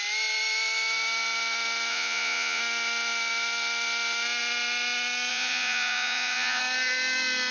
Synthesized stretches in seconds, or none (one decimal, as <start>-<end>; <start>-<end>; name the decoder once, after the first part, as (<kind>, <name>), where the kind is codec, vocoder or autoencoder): 1.9-2.6 (vocoder, Vocos); 5.3-6.6